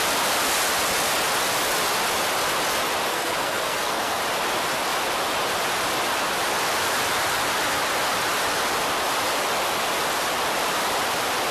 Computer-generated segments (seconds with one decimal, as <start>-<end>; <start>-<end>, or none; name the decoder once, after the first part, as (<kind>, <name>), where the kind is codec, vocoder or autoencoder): 3.1-4.2 (codec, SNAC)